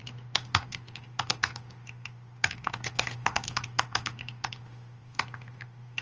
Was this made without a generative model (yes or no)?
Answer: no